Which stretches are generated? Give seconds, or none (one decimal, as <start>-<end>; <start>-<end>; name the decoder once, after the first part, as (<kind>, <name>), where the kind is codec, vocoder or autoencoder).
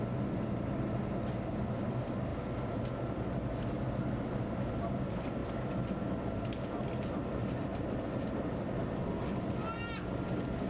none